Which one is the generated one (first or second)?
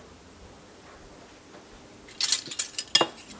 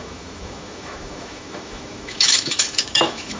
second